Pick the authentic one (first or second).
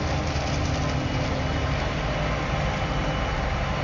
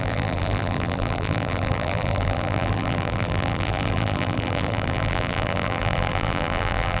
first